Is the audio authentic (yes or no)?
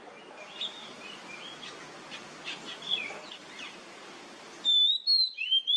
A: yes